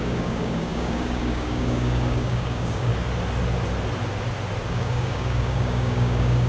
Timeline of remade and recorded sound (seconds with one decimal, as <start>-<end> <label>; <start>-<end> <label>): 0.0-2.9 remade; 2.9-4.7 recorded; 4.7-6.5 remade